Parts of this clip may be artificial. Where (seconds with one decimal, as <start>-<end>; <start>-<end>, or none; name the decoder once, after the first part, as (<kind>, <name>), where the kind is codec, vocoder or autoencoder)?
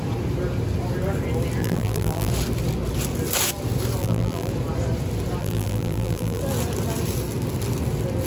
1.6-2.3 (vocoder, BigVGAN v2); 4.0-4.5; 5.4-6.4